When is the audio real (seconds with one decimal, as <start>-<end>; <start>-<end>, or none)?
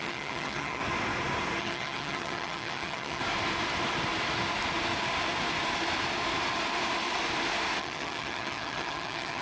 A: 0.8-1.6; 3.2-7.8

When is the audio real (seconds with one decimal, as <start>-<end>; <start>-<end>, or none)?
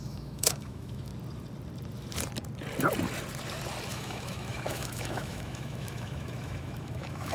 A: 1.1-3.9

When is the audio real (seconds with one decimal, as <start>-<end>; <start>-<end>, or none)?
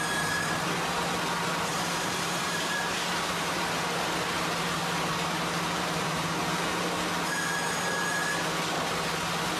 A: 0.0-1.7; 6.8-9.6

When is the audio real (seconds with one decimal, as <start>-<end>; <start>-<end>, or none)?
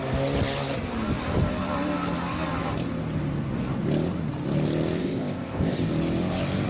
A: 0.0-5.0; 5.9-6.7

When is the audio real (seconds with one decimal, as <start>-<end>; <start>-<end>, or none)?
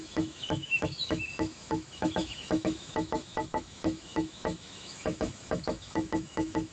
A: none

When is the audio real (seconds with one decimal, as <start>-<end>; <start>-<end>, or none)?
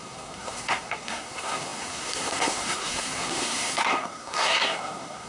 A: none